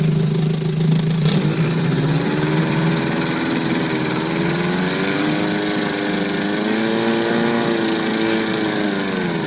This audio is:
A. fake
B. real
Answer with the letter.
B